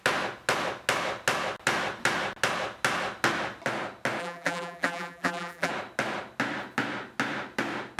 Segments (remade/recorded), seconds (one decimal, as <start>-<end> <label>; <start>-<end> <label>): 0.0-4.2 recorded; 4.2-5.7 remade; 5.7-8.0 recorded